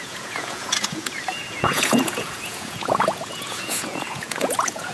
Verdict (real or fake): fake